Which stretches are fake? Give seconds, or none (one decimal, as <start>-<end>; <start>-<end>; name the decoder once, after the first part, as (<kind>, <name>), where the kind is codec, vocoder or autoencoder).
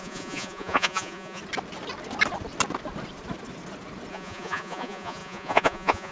0.0-1.4 (vocoder, Vocos); 4.1-6.1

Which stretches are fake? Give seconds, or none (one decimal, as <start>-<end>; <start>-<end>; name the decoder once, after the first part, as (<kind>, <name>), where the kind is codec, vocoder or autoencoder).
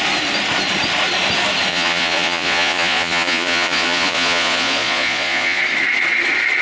1.7-5.6 (vocoder, Vocos)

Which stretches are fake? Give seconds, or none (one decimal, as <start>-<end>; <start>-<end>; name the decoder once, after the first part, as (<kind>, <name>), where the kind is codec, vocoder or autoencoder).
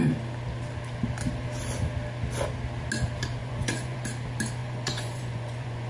3.4-4.0 (vocoder, Vocos); 4.6-5.9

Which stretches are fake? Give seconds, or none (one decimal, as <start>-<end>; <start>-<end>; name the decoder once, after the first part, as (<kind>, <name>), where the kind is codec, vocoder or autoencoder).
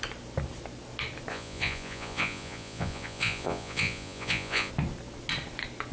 1.3-4.7 (vocoder, Vocos)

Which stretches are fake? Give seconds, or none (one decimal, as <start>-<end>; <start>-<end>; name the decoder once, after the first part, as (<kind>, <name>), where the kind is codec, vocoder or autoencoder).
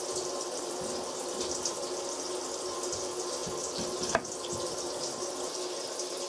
none